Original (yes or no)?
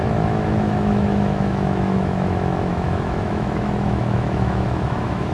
no